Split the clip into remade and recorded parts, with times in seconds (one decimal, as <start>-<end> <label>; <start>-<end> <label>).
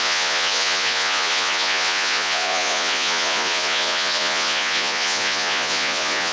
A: 0.0-6.3 remade